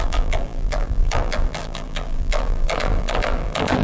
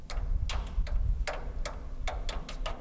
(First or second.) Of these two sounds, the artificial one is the first